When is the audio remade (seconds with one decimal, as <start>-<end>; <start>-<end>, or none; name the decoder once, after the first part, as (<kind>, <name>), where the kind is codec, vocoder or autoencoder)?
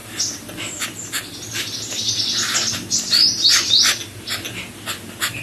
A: none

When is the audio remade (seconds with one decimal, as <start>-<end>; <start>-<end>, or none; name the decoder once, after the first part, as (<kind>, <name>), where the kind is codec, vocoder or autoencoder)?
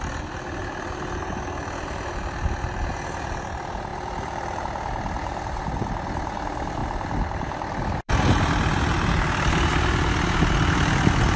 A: 3.9-4.6 (vocoder, BigVGAN v2); 6.8-8.1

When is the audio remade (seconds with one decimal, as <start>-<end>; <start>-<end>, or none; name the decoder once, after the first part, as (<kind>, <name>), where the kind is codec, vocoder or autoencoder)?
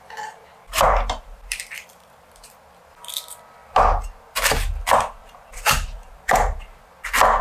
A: 0.7-2.2 (vocoder, BigVGAN v2); 5.2-6.8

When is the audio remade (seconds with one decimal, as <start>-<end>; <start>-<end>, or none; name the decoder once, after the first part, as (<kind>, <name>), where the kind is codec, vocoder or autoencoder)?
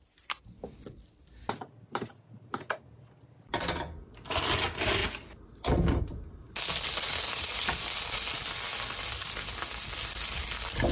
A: none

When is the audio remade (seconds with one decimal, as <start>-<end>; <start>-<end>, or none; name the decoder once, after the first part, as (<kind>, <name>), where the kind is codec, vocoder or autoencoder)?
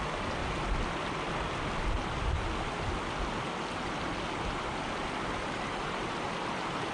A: 0.0-0.4 (vocoder, BigVGAN v2); 4.5-6.9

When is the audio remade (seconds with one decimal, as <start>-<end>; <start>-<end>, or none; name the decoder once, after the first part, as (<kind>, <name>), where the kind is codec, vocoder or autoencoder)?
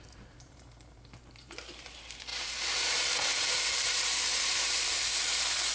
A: 0.0-5.7 (vocoder, BigVGAN v2)